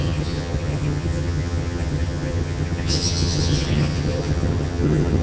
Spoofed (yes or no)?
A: yes